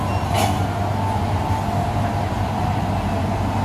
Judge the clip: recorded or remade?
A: recorded